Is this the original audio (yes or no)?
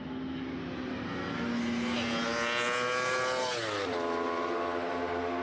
yes